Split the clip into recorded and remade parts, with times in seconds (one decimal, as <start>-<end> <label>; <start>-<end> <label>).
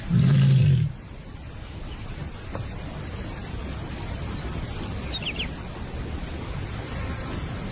0.0-7.7 recorded